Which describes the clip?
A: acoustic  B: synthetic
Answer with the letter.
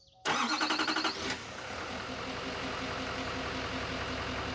A